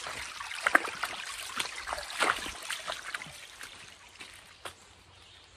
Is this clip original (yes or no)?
yes